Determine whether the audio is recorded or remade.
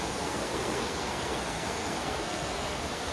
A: remade